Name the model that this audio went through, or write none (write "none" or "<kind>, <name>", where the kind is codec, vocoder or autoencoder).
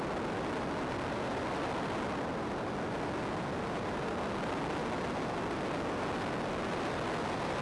none